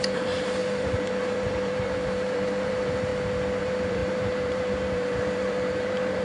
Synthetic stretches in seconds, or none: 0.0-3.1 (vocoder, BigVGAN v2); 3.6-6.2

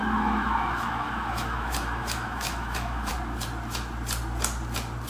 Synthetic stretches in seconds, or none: 0.0-3.1 (autoencoder, DAC-VAE)

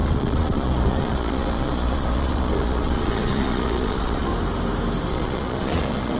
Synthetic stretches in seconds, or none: 0.0-4.3 (vocoder, Vocos); 5.1-6.2

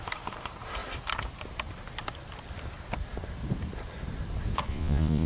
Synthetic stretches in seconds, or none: 4.7-5.3 (vocoder, Vocos)

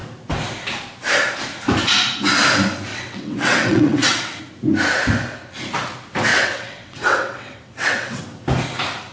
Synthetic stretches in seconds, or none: 2.9-4.4 (vocoder, WaveNeXt); 6.3-8.2

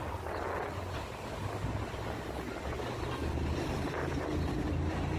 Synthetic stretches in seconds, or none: 3.2-4.0 (vocoder, BigVGAN v2)

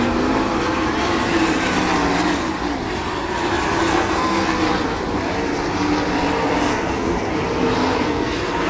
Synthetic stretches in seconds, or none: 3.9-4.6 (codec, SNAC); 6.7-7.3; 7.8-8.7

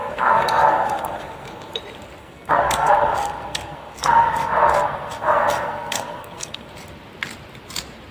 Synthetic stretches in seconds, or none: 0.0-1.7 (codec, SNAC); 2.2-6.7